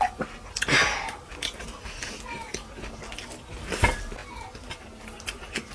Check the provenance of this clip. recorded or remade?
recorded